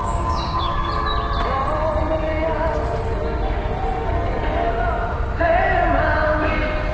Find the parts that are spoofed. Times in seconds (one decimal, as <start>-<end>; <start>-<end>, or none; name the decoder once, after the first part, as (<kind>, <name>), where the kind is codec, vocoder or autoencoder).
0.0-0.9 (codec, DAC)